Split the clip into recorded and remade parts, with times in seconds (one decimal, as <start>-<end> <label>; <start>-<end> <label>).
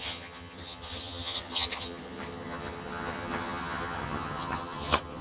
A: 0.0-5.2 remade